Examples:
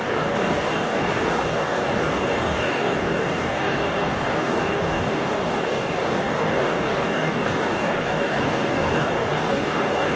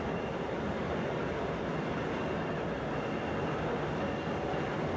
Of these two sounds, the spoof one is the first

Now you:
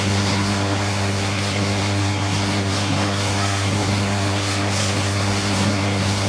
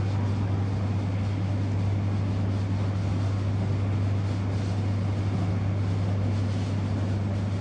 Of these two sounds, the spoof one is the first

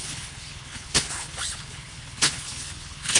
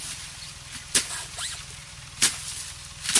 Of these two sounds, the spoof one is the first